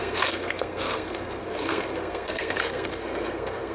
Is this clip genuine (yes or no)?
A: no